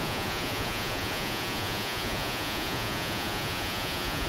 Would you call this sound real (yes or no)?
no